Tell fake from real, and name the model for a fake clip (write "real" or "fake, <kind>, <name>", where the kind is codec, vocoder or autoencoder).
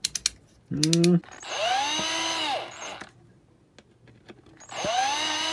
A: real